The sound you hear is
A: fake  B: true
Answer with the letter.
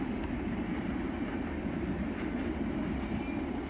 B